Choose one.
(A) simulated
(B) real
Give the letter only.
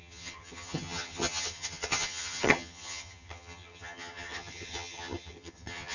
A